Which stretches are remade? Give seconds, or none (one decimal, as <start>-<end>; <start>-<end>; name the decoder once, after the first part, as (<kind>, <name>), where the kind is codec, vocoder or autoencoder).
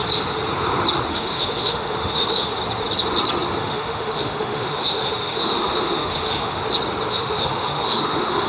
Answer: 1.1-2.5 (autoencoder, DAC-VAE); 3.6-6.6; 7.1-8.5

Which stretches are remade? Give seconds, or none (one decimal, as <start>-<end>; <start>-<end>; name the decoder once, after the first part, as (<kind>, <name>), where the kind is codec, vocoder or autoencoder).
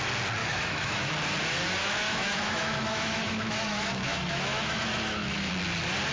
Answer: 0.4-1.1 (autoencoder, DAC-VAE); 1.8-5.5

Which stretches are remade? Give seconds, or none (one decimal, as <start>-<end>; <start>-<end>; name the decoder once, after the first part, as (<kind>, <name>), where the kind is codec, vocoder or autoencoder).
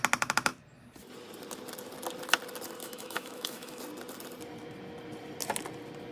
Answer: 2.8-3.8 (autoencoder, DAC-VAE)